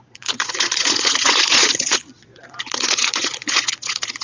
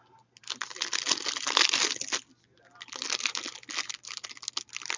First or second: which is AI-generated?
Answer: first